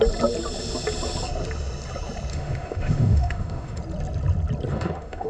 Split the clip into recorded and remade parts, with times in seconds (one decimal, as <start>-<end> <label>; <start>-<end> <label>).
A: 0.0-2.3 recorded; 2.3-3.8 remade; 3.8-4.7 recorded; 4.7-5.3 remade